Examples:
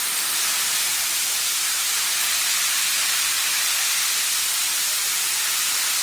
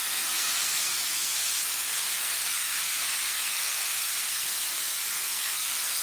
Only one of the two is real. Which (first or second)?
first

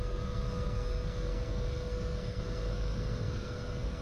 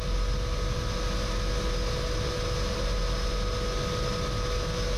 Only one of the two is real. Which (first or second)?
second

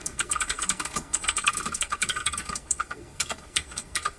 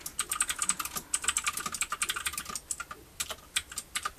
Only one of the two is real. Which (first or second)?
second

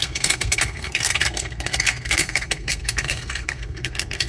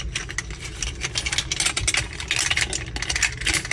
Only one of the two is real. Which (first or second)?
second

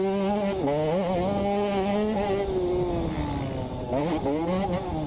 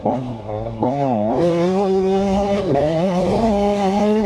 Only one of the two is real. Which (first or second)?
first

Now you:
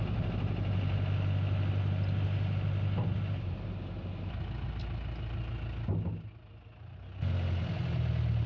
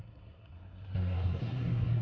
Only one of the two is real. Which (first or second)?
first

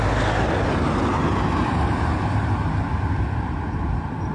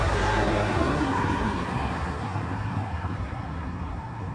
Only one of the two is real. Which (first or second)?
first